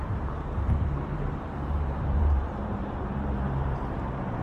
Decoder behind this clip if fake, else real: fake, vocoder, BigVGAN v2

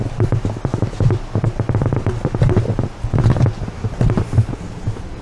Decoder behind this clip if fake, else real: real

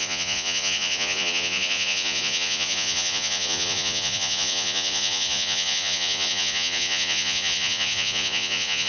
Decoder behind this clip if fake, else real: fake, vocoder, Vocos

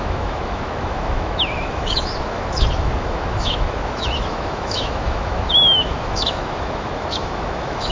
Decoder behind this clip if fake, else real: fake, autoencoder, DAC-VAE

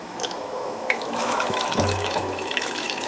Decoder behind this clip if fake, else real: fake, autoencoder, DAC-VAE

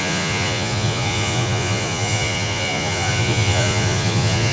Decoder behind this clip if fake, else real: fake, vocoder, Vocos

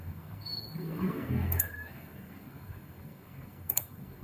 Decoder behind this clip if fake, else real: fake, codec, SNAC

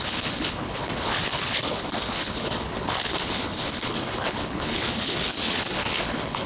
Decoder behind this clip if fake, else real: fake, codec, HILCodec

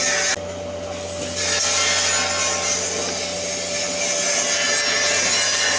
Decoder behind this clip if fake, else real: real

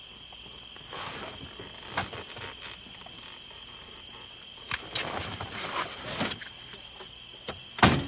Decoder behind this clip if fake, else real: real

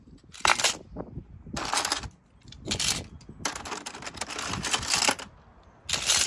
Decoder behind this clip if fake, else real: real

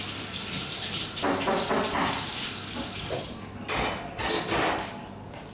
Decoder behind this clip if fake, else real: real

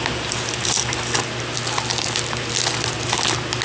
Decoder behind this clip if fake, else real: real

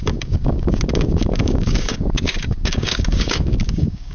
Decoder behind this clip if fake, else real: fake, codec, DAC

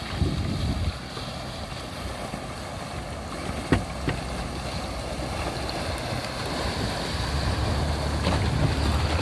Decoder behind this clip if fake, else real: real